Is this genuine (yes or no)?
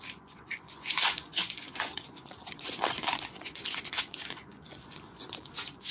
no